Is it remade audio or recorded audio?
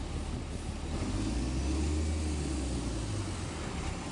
recorded